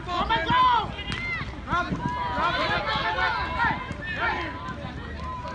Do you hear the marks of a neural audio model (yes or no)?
no